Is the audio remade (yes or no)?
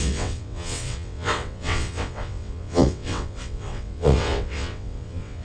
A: yes